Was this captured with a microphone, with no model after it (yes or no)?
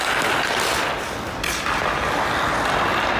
yes